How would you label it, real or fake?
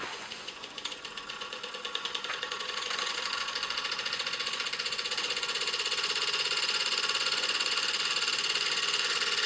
fake